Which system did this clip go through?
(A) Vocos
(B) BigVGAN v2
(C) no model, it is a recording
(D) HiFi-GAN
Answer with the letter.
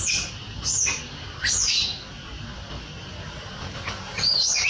B